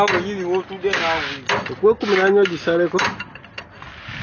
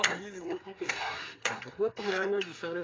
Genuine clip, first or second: first